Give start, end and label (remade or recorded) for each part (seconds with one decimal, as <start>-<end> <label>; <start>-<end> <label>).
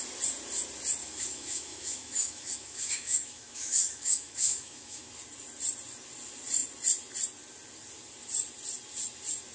0.0-1.0 recorded; 1.0-5.1 remade; 5.1-9.5 recorded